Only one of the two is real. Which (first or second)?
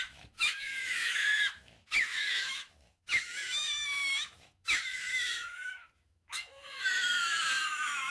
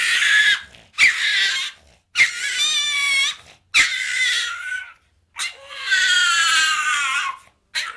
second